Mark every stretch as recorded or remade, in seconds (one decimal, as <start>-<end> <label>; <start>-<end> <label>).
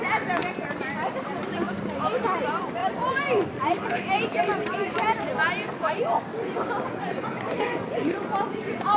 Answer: 0.0-9.0 recorded